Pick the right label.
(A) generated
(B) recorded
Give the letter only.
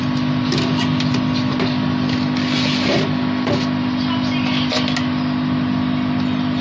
B